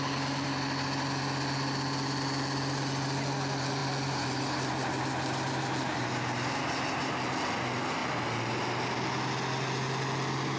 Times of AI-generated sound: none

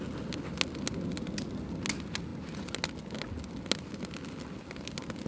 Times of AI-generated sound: none